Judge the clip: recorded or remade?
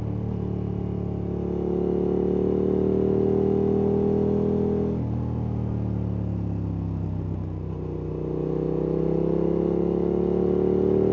recorded